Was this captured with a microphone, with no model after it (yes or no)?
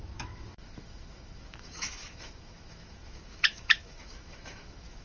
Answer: no